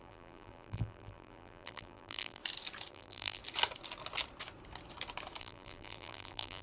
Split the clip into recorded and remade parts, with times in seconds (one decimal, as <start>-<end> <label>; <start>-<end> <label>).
0.0-2.4 remade; 2.4-2.9 recorded; 2.9-3.4 remade; 3.4-5.4 recorded; 5.4-6.6 remade